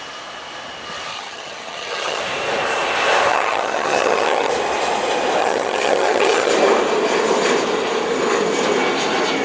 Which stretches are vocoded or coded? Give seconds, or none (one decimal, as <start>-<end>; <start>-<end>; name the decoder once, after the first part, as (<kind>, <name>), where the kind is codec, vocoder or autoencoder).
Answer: 1.1-2.2 (vocoder, HiFi-GAN); 3.3-4.5; 5.4-6.5